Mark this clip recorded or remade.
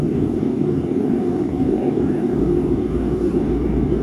remade